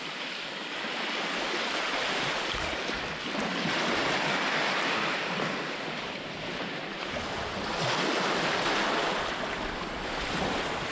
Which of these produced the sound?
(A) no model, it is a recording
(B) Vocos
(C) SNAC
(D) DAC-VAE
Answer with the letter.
A